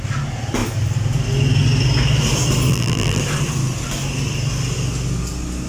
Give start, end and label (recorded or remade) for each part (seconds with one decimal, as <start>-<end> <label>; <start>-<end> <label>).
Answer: 0.0-2.7 recorded; 2.7-3.2 remade; 3.2-5.7 recorded